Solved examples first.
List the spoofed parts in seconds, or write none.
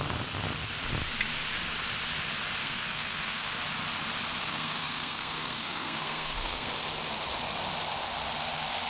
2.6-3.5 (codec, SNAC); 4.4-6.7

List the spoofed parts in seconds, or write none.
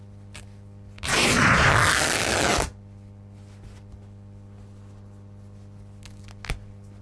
1.1-1.7 (vocoder, Vocos)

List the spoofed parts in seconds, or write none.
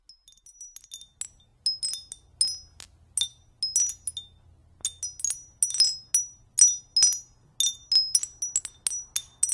none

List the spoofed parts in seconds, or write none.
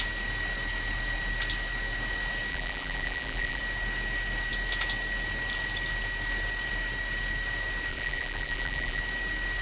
2.5-3.6 (vocoder, BigVGAN v2); 7.9-9.0